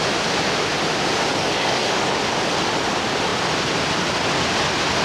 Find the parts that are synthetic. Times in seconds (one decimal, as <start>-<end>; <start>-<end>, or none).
1.3-2.2